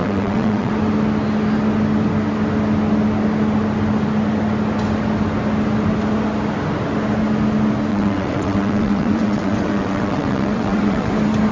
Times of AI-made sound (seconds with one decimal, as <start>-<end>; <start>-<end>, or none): 0.0-0.7; 7.9-11.1